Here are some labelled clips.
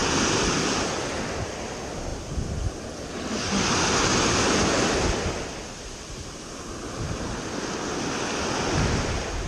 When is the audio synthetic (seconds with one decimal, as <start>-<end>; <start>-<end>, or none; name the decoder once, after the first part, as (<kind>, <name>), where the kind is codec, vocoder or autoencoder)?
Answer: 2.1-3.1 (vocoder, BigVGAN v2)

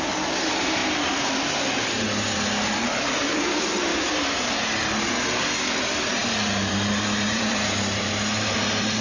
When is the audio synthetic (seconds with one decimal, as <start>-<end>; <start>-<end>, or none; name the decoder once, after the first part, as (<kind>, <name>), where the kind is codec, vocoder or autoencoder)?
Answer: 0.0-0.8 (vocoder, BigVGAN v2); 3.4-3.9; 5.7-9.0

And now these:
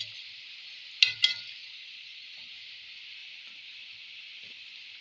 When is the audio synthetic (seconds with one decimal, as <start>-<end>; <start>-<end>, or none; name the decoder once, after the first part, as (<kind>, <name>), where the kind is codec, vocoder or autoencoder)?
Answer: 1.6-2.5 (vocoder, Vocos)